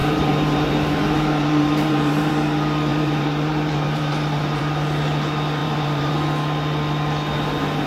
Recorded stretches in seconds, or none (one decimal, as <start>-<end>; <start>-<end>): 2.3-2.9; 4.6-5.6; 6.1-7.9